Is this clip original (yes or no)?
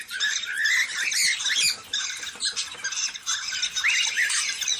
yes